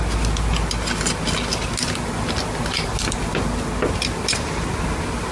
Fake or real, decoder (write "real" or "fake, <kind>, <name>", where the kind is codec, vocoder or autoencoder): real